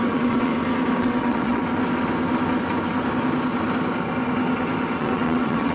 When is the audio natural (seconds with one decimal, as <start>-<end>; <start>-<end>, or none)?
0.5-1.0; 1.6-5.0